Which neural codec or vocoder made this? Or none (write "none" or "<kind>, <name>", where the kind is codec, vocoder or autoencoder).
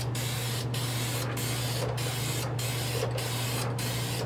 none